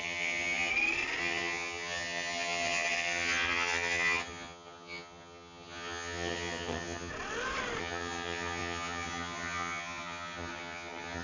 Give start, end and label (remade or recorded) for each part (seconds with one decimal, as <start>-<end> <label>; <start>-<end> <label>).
0.0-0.7 remade; 0.7-1.2 recorded; 1.2-7.1 remade; 7.1-7.8 recorded; 7.8-11.2 remade